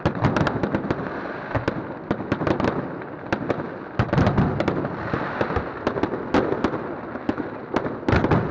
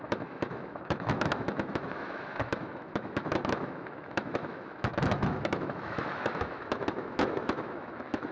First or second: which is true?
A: first